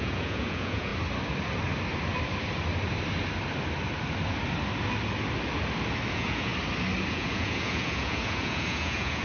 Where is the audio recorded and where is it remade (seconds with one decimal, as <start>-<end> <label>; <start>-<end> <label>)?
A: 0.0-0.9 remade; 0.9-6.1 recorded; 6.1-6.5 remade; 6.5-7.1 recorded; 7.1-9.2 remade